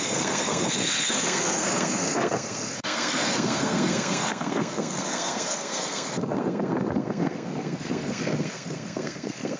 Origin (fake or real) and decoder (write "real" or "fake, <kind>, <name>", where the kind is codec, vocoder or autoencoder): fake, codec, SNAC